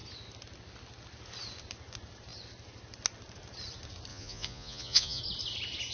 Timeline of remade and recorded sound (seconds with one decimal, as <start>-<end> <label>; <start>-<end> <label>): 0.0-4.1 recorded; 4.1-5.2 remade; 5.2-5.9 recorded